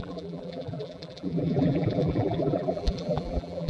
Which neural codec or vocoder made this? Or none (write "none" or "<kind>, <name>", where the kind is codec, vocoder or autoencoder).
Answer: vocoder, BigVGAN v2